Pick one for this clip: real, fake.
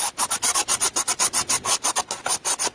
real